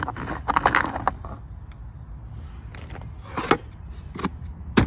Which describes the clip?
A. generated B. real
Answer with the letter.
B